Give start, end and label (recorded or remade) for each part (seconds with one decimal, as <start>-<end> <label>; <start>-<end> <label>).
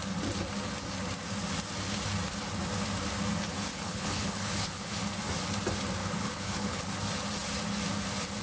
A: 0.0-3.7 recorded; 3.7-5.0 remade; 5.0-6.0 recorded; 6.0-6.9 remade; 6.9-8.4 recorded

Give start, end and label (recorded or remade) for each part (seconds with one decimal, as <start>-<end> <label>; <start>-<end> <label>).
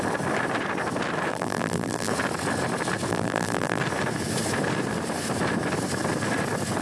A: 0.0-1.3 recorded; 1.3-2.1 remade; 2.1-3.1 recorded; 3.1-3.8 remade; 3.8-6.8 recorded